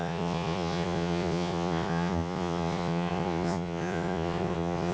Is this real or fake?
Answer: fake